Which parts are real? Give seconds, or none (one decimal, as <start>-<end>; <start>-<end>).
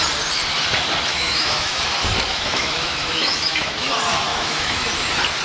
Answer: 0.0-1.1; 1.8-2.3; 3.9-4.3; 4.9-5.4